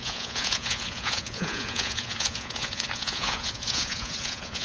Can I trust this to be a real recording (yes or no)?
no